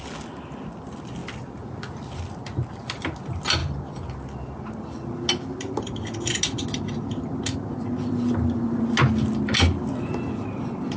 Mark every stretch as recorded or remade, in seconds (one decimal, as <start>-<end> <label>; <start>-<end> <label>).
0.0-11.0 recorded